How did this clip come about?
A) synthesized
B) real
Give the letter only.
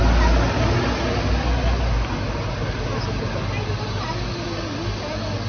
B